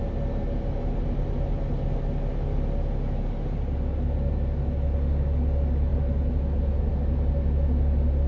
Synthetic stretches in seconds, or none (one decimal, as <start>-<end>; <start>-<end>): none

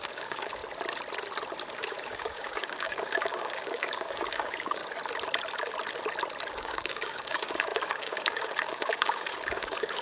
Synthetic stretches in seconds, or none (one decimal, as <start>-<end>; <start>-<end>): 0.0-0.6; 1.7-4.8; 6.5-10.0

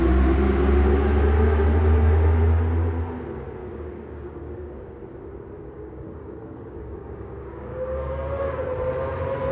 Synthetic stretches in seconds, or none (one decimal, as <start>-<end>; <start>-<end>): 3.6-5.0; 5.6-8.6